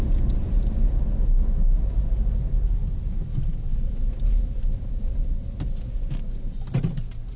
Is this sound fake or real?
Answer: real